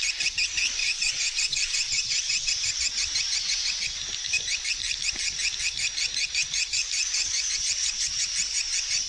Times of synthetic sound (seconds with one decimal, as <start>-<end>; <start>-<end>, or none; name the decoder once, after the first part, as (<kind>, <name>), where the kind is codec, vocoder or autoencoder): 0.8-2.5 (vocoder, Vocos)